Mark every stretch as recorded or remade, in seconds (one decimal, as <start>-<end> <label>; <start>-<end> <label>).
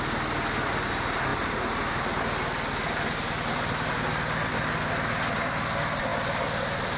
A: 0.0-7.0 recorded